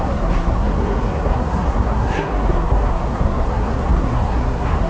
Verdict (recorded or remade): remade